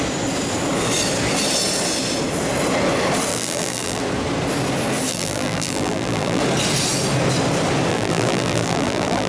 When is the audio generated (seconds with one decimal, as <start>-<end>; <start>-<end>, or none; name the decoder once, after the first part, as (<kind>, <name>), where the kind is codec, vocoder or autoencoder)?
3.3-4.0 (vocoder, BigVGAN v2); 5.1-6.4; 7.9-9.3

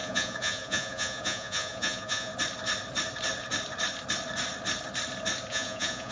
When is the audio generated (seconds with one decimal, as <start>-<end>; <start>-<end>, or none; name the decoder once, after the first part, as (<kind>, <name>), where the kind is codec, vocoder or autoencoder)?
0.0-2.3 (vocoder, Vocos); 5.5-6.1